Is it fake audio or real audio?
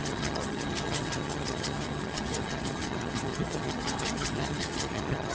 fake